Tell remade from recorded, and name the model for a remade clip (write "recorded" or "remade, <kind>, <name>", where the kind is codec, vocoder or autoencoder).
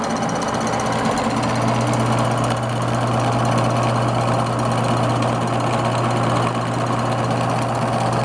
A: recorded